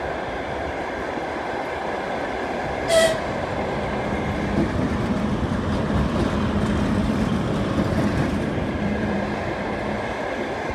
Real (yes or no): no